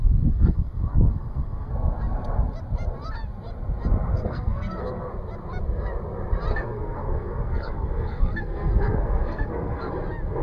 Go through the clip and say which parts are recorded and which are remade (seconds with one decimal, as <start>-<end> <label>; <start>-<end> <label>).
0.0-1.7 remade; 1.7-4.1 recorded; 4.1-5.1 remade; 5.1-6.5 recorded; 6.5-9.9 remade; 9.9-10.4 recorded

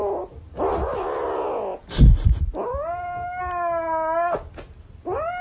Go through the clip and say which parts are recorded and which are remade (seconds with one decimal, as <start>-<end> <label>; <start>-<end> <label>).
0.0-5.4 recorded

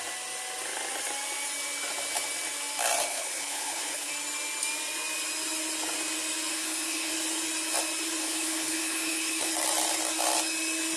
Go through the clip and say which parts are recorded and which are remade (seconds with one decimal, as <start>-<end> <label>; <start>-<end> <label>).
0.0-3.1 recorded; 3.1-4.1 remade; 4.1-6.5 recorded; 6.5-7.1 remade; 7.1-8.2 recorded; 8.2-9.5 remade; 9.5-11.0 recorded

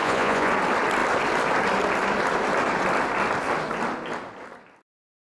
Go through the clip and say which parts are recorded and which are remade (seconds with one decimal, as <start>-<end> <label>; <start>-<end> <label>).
0.0-0.5 remade; 0.5-5.4 recorded

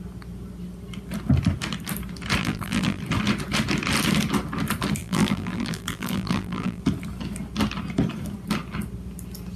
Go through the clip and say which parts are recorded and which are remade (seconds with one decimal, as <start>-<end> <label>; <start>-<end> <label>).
0.0-2.4 recorded; 2.4-3.0 remade; 3.0-5.0 recorded; 5.0-6.8 remade; 6.8-9.6 recorded

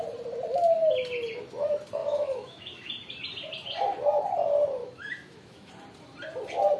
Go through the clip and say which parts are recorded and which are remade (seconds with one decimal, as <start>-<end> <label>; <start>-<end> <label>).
0.0-2.0 recorded; 2.0-2.9 remade; 2.9-4.8 recorded; 4.8-5.7 remade; 5.7-6.8 recorded